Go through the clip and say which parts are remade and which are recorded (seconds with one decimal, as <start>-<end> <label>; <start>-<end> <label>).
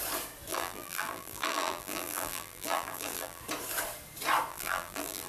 0.0-0.5 recorded; 0.5-3.4 remade; 3.4-4.5 recorded; 4.5-5.3 remade